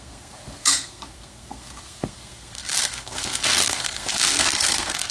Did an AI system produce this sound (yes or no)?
yes